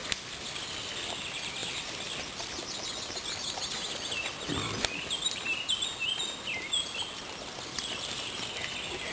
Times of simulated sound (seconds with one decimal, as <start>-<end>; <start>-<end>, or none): none